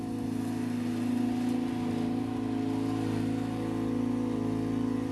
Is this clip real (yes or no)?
yes